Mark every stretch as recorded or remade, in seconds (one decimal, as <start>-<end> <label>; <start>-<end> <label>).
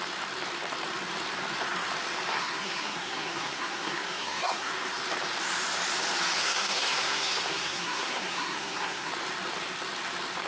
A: 0.0-2.3 recorded; 2.3-4.7 remade; 4.7-6.4 recorded; 6.4-9.1 remade; 9.1-10.5 recorded